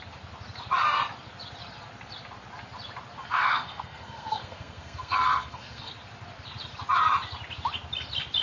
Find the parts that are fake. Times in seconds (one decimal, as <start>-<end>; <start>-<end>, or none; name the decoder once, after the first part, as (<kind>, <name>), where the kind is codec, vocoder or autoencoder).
3.2-5.9 (codec, SNAC)